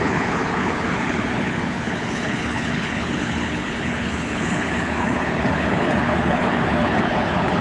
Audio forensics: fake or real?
fake